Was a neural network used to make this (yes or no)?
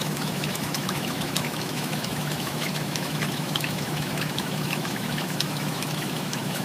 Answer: yes